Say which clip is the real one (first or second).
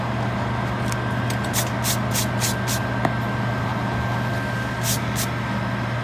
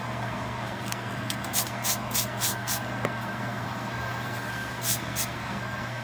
first